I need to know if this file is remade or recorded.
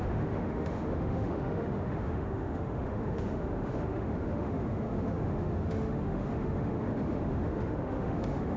remade